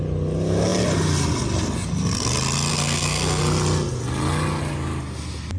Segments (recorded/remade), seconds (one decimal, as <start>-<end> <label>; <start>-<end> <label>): 0.0-2.7 recorded; 2.7-3.4 remade; 3.4-5.6 recorded